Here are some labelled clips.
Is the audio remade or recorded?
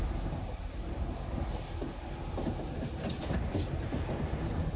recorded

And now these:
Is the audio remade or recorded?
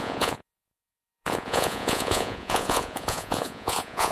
remade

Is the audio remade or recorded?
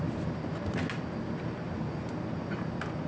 recorded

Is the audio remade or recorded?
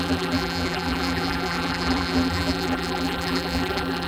remade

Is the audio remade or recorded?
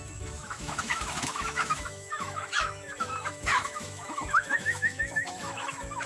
remade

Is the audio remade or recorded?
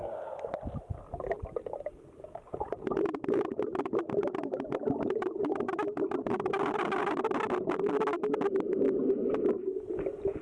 recorded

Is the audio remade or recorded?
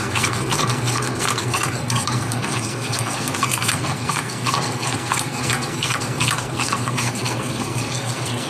remade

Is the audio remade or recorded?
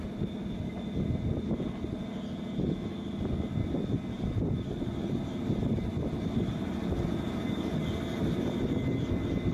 recorded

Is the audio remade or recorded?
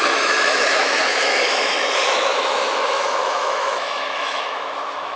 remade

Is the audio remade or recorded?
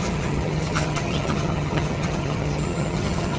remade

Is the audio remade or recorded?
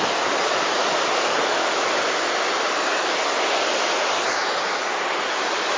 recorded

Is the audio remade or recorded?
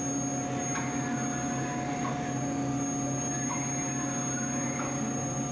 recorded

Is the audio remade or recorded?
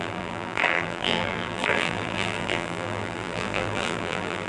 remade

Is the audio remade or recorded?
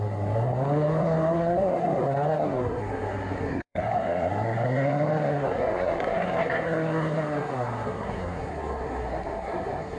remade